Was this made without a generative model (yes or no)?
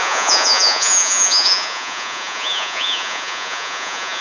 no